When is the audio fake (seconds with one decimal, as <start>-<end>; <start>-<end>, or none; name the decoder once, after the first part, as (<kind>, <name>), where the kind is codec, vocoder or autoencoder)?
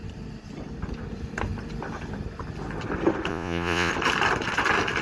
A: 3.3-3.9 (vocoder, Vocos)